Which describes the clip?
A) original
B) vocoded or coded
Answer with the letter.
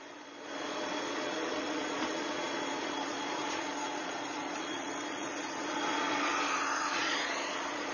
B